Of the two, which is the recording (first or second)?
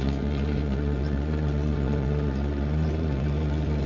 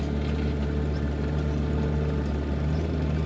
second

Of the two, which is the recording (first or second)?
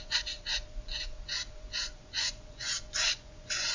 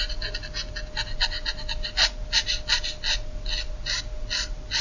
second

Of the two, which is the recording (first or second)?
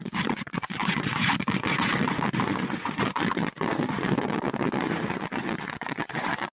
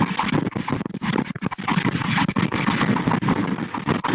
second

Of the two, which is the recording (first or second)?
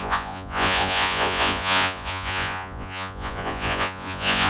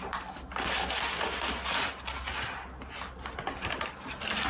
second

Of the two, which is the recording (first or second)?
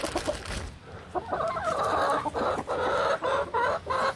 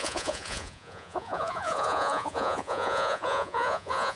first